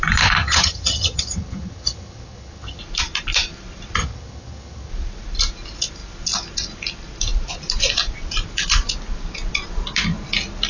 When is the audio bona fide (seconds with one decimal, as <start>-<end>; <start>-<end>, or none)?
0.0-0.4; 2.8-4.0; 4.9-10.7